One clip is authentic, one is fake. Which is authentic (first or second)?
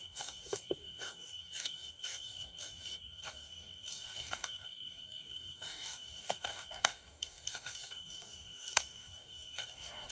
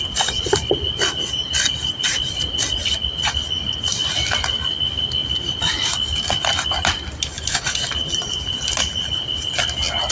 second